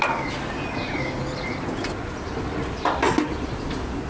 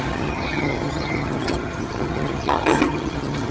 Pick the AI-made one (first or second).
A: second